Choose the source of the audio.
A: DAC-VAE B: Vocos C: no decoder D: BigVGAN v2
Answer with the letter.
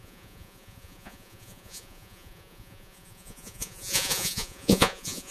B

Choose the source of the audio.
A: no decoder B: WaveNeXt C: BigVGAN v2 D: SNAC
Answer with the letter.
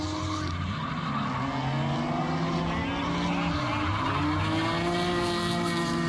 A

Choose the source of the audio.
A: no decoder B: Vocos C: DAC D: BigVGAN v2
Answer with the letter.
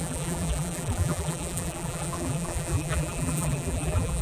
D